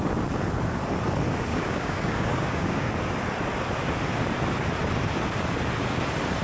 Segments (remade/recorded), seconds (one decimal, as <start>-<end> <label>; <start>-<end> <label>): 0.0-1.5 recorded; 1.5-2.9 remade; 2.9-6.4 recorded